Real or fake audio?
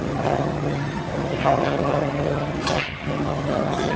fake